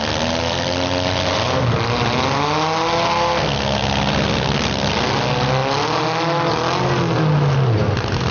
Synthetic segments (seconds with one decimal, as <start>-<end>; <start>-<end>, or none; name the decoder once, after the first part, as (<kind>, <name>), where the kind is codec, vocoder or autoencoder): none